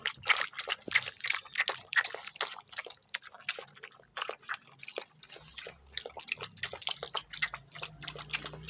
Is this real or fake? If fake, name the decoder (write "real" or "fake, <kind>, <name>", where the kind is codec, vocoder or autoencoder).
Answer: real